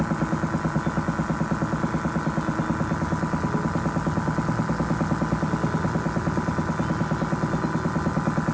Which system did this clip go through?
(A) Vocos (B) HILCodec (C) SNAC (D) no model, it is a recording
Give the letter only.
D